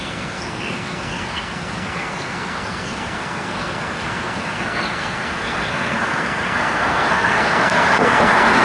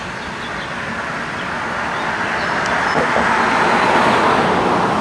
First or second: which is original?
second